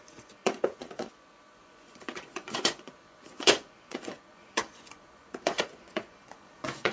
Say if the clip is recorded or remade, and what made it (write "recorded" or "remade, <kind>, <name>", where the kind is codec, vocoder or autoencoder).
remade, vocoder, Vocos